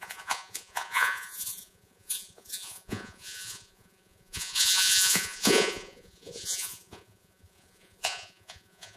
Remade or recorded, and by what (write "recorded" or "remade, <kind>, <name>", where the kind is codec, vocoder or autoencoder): remade, vocoder, Vocos